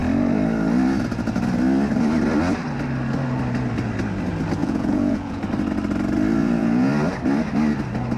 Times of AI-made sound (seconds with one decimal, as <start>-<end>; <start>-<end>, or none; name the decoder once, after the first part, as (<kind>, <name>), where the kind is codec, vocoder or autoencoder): 4.6-5.4 (vocoder, Vocos); 6.4-6.9

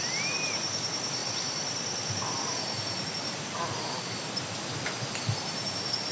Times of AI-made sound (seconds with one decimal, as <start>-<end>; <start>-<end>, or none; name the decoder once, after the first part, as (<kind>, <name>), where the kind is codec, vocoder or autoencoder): none

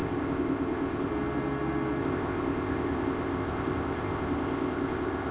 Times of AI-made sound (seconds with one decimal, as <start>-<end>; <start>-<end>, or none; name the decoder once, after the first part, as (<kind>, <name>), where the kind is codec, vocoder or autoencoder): 0.0-1.1 (codec, ZipCodec); 2.0-5.3

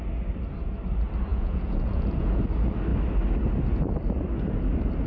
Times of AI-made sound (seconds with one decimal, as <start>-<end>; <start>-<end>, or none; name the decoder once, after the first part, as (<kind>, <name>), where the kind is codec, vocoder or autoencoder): 1.3-2.4 (vocoder, Vocos)